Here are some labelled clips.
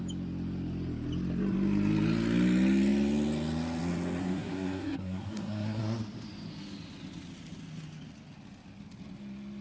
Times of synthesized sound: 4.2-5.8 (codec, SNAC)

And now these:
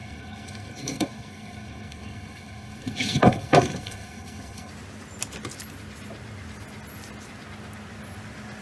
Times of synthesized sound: 0.0-4.7 (codec, SNAC)

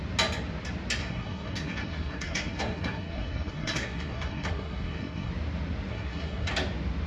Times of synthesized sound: 1.0-5.3 (codec, SNAC); 5.9-6.5

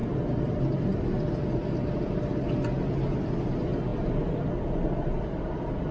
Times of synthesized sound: none

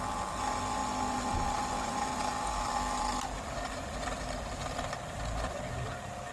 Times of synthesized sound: none

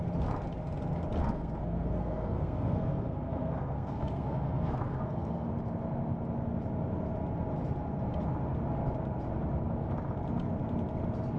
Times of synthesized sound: 1.2-5.5 (codec, SNAC)

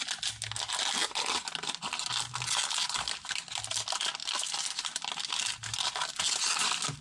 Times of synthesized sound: none

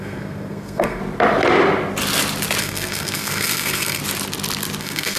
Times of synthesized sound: 0.0-1.0 (codec, SNAC); 2.6-4.0; 4.8-5.2